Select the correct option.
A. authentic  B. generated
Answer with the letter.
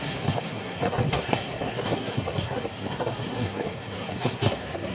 B